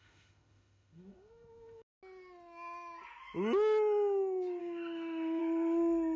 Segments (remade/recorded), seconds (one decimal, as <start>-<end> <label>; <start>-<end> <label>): 0.0-1.9 remade; 1.9-4.6 recorded; 4.6-5.4 remade; 5.4-6.2 recorded